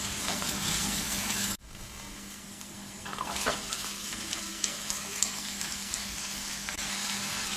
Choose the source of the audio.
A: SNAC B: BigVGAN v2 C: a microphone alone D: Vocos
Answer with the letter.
A